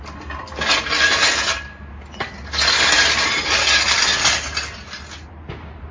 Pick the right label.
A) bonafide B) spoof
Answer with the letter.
A